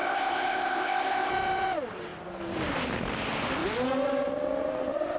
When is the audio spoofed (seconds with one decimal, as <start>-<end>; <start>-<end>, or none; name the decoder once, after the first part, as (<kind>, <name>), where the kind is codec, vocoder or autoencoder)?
0.0-1.3 (codec, ZipCodec)